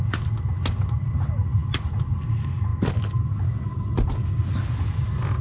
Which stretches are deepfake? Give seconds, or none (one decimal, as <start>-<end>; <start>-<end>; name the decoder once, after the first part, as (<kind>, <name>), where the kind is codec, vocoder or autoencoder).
none